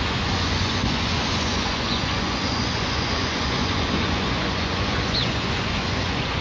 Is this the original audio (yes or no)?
no